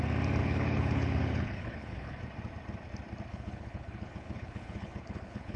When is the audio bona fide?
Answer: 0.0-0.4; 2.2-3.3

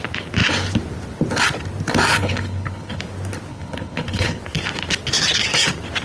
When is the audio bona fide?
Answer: 0.0-2.1; 3.0-3.5; 4.4-6.0

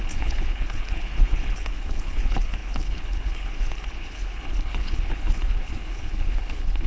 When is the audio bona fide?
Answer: none

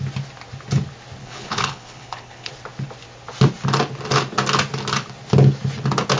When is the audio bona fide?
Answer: 0.0-1.2; 2.5-6.2

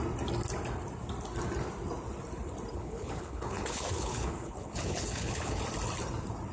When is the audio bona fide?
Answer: 0.0-2.7; 5.6-6.5

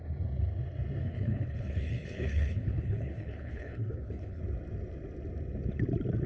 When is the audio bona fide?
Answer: 0.0-1.0; 4.4-6.3

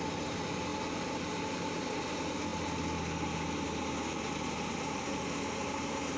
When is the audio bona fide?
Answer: 0.0-6.2